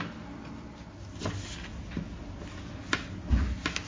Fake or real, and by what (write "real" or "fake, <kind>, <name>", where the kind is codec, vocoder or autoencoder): real